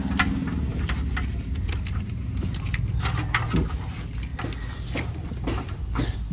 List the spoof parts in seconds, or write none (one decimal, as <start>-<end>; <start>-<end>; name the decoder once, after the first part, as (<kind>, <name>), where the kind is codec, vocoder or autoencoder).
5.8-6.3 (codec, HILCodec)